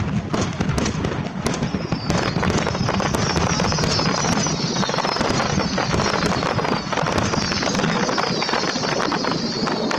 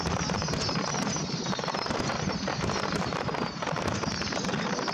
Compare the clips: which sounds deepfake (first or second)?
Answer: second